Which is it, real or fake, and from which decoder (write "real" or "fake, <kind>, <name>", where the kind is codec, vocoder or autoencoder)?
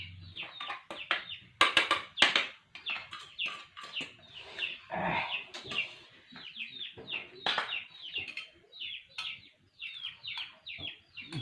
real